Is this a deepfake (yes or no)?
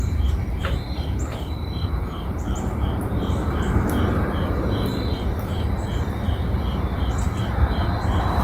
yes